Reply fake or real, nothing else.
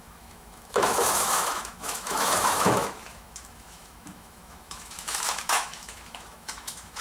fake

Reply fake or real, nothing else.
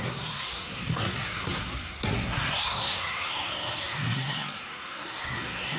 fake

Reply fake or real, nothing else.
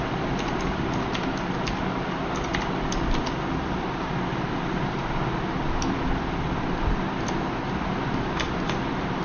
real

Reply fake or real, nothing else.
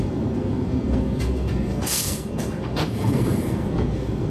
fake